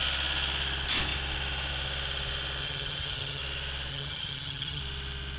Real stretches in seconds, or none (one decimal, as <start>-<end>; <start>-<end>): 0.0-2.6; 3.4-3.9; 4.8-5.4